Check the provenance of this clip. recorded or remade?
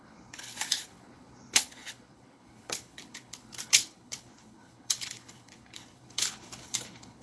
remade